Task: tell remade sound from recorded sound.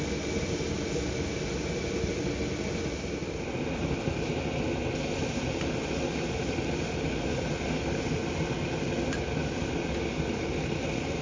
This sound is recorded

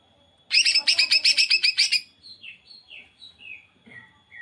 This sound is recorded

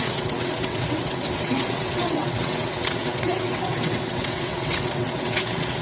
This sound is remade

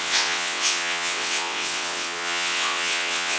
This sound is remade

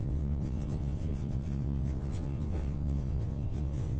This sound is remade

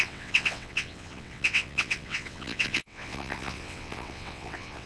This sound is remade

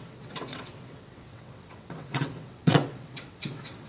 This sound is remade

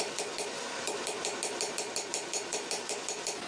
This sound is recorded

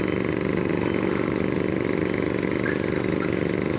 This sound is recorded